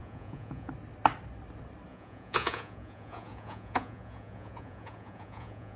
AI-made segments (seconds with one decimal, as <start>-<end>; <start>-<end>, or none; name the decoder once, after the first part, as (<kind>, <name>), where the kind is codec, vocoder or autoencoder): 0.0-0.7 (vocoder, Vocos); 1.9-5.8